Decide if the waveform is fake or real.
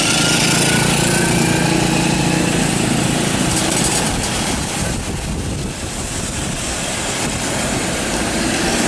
real